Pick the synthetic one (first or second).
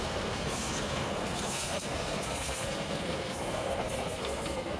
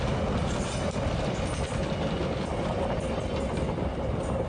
first